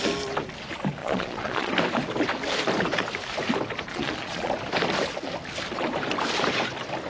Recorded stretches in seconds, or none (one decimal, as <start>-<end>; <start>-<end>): 0.0-1.0; 1.7-3.9; 4.5-7.1